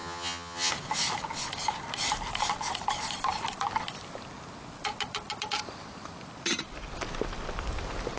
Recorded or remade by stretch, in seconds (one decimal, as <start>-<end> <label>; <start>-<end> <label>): 0.0-0.7 remade; 0.7-8.2 recorded